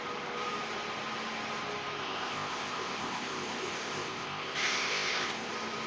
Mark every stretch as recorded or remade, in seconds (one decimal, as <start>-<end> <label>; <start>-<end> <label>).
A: 0.0-2.0 recorded; 2.0-5.5 remade; 5.5-5.9 recorded